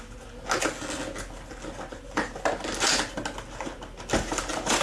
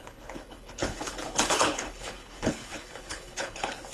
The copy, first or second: second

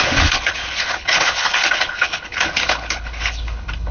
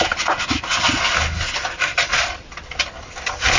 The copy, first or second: first